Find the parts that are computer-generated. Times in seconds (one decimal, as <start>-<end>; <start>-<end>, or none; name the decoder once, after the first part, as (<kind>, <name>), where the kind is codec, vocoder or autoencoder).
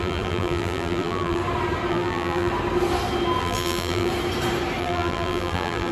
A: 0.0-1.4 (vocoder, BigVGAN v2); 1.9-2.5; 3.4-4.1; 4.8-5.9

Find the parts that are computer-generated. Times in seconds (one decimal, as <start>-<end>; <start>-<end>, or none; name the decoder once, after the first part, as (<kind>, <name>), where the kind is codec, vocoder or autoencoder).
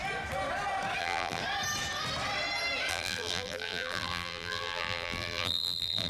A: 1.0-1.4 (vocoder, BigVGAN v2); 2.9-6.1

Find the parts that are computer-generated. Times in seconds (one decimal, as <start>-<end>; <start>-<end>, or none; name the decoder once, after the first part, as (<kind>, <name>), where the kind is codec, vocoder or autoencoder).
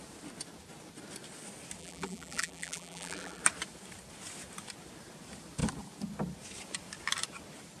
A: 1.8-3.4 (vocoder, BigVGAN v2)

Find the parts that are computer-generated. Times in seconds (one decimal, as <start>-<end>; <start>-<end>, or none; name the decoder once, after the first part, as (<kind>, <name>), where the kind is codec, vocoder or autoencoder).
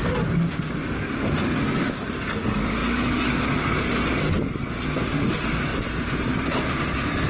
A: 0.8-1.9 (vocoder, BigVGAN v2); 5.7-7.3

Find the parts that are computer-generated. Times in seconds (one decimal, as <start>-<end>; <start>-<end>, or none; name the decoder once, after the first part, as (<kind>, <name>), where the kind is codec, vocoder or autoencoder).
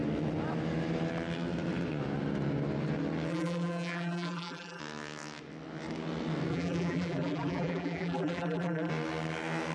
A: 3.3-4.8 (vocoder, BigVGAN v2); 6.5-8.9